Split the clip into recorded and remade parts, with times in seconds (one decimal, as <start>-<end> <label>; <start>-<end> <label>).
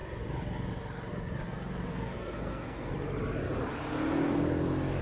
0.0-1.9 recorded; 1.9-2.9 remade; 2.9-5.0 recorded